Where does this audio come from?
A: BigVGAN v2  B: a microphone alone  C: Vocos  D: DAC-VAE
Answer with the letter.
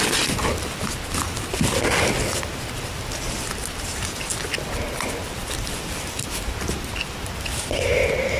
B